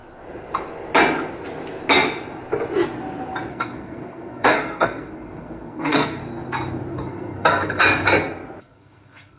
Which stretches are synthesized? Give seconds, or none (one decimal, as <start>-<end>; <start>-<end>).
3.5-6.2; 6.9-7.8; 8.6-9.4